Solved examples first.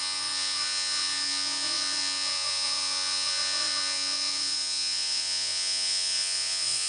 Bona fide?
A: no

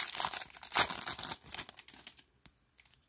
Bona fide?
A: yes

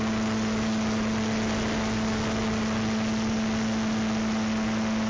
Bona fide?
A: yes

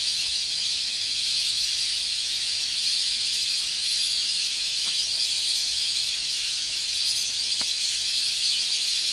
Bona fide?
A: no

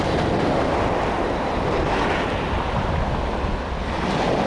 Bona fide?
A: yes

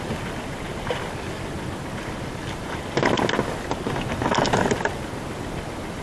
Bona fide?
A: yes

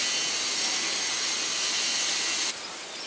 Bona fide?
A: yes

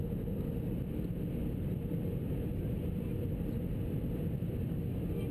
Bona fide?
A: yes